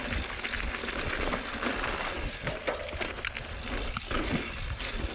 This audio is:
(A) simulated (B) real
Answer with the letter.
B